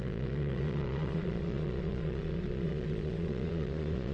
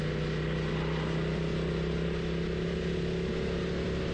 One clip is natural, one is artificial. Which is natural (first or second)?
second